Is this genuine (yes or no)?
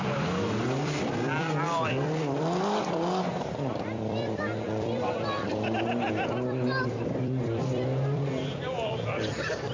no